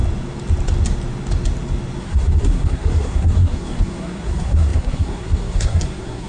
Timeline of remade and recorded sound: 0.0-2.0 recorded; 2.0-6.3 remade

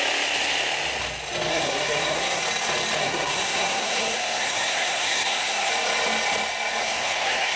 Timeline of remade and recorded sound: 0.0-1.5 recorded; 1.5-2.4 remade; 2.4-3.0 recorded; 3.0-5.7 remade; 5.7-6.8 recorded; 6.8-7.6 remade

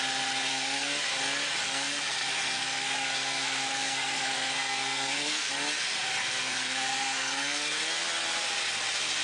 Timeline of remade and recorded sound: 0.0-0.5 recorded; 0.5-1.0 remade; 1.0-1.6 recorded; 1.6-5.5 remade; 5.5-6.2 recorded; 6.2-7.9 remade; 7.9-9.2 recorded